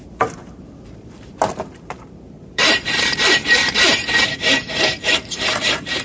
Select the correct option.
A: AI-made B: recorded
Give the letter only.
A